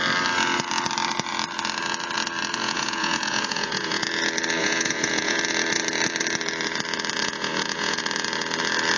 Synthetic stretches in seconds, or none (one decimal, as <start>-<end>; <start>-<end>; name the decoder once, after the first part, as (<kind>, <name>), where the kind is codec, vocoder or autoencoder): 2.6-4.0 (vocoder, Vocos); 4.6-5.4; 7.2-8.0